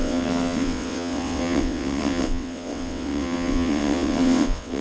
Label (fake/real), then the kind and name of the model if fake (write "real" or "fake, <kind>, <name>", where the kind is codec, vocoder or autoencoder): fake, vocoder, WaveNeXt